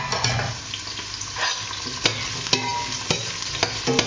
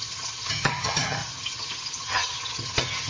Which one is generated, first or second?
second